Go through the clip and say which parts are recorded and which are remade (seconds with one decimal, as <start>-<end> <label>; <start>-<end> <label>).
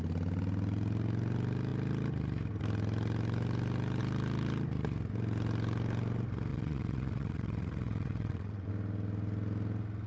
0.0-6.5 recorded; 6.5-8.7 remade; 8.7-10.1 recorded